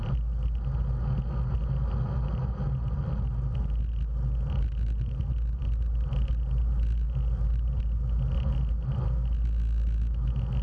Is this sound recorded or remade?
recorded